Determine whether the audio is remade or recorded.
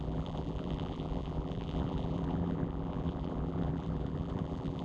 remade